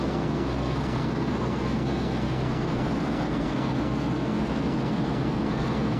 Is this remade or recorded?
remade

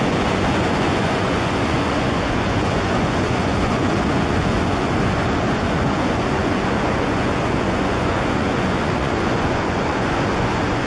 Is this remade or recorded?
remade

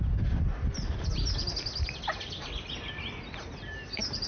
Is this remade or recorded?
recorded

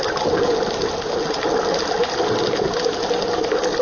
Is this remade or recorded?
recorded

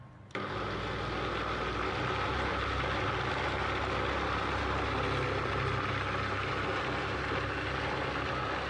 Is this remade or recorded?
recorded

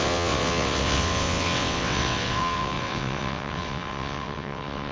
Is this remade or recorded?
remade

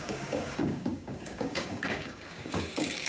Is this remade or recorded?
remade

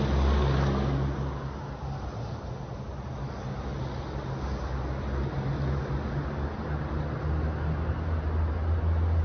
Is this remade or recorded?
recorded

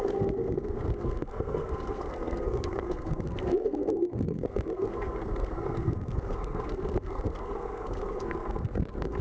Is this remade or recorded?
remade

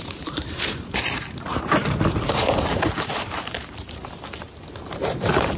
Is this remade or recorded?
remade